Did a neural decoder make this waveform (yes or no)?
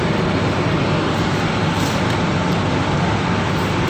no